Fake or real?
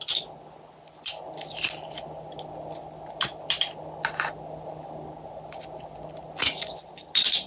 real